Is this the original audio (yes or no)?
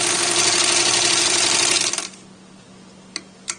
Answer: yes